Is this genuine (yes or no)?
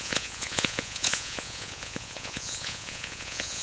no